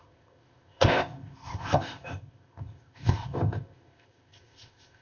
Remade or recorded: remade